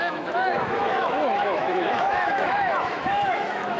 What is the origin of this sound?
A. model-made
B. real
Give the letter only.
A